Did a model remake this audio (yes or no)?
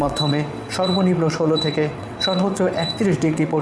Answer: yes